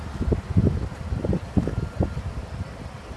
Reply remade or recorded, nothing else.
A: recorded